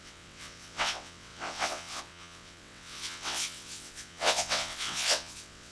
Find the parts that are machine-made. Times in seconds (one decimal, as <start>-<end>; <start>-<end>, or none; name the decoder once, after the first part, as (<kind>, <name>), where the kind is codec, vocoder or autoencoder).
0.0-5.7 (vocoder, WaveNeXt)